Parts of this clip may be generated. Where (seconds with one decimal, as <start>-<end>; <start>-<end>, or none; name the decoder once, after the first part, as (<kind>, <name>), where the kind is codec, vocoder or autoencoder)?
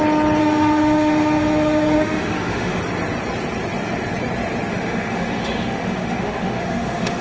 0.4-2.8 (autoencoder, DAC-VAE); 4.7-7.2